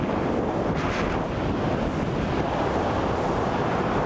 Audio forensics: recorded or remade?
recorded